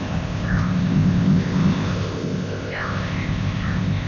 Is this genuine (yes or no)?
no